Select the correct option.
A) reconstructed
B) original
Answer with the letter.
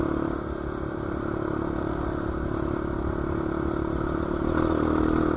B